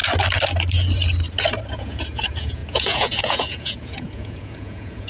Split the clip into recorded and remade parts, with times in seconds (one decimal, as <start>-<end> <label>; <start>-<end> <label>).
0.0-1.7 recorded; 1.7-5.1 remade